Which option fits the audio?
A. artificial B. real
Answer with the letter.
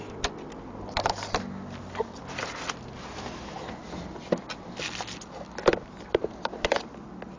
B